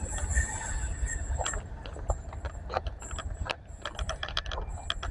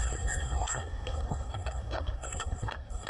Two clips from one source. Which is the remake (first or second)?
second